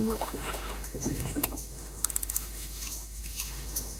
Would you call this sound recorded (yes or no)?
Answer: no